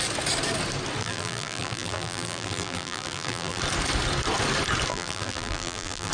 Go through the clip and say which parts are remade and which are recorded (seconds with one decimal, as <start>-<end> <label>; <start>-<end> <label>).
0.0-1.0 recorded; 1.0-3.6 remade; 3.6-4.9 recorded; 4.9-6.1 remade